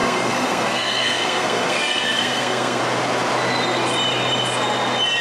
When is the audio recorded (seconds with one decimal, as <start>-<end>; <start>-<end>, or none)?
2.8-5.2

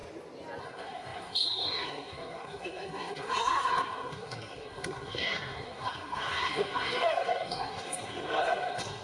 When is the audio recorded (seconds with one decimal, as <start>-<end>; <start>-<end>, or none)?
0.0-0.6

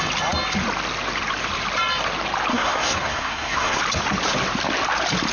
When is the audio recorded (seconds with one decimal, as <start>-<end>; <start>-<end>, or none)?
0.0-2.5; 3.8-5.3

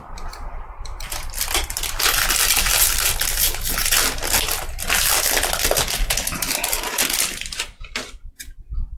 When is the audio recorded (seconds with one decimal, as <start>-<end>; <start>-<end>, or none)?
0.0-9.0

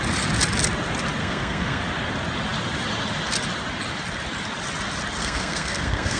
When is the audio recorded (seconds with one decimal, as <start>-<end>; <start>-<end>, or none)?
0.0-1.2; 1.8-5.2

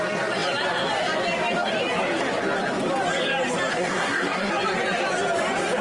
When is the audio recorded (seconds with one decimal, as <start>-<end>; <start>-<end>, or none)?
0.0-3.7; 4.5-5.8